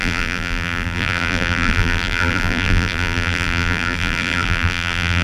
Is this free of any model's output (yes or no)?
no